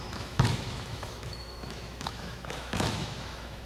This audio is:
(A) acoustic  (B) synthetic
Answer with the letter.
B